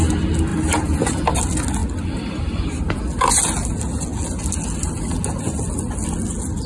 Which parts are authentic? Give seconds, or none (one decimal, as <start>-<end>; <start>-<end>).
0.0-6.7